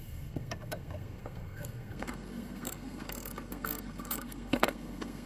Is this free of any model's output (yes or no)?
no